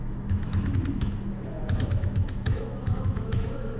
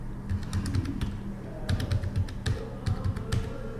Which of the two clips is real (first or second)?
second